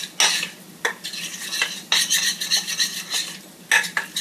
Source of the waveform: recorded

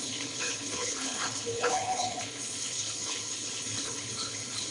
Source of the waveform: remade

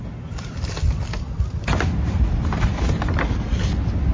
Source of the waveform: recorded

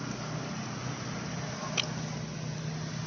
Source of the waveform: recorded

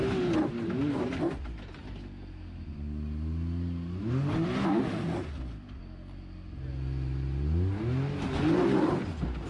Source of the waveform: recorded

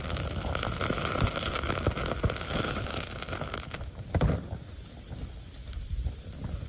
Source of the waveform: recorded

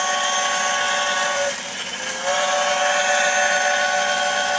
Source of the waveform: recorded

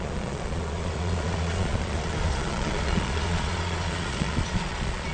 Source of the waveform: remade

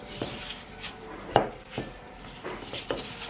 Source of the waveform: recorded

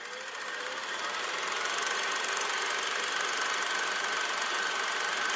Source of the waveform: recorded